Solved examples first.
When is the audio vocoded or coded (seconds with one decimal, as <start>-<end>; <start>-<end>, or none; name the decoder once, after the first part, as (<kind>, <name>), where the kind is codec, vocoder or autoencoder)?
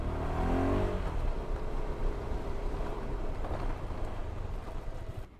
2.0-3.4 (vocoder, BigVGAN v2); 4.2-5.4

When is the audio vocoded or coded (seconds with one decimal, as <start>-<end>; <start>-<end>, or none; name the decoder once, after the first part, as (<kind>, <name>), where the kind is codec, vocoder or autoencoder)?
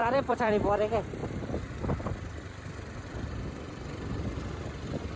0.0-0.6 (vocoder, BigVGAN v2); 1.2-4.2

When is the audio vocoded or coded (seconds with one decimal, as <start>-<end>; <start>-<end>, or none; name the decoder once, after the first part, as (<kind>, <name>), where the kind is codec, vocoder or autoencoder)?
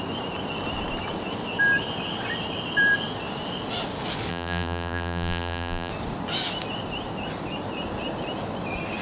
4.3-5.9 (vocoder, BigVGAN v2)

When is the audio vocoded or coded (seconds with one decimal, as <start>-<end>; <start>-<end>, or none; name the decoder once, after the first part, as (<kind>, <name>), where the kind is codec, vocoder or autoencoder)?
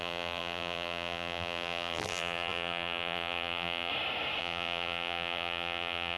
0.0-3.9 (vocoder, BigVGAN v2); 4.4-6.2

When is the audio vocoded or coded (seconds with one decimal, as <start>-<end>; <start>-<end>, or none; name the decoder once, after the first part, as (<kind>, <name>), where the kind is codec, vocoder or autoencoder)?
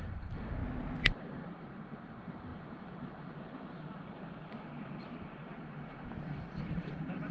0.0-0.6 (vocoder, BigVGAN v2); 1.1-7.3